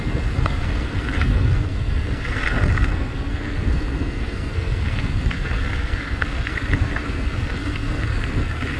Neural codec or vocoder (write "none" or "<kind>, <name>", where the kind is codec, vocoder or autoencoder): codec, SNAC